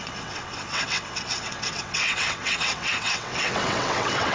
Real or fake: fake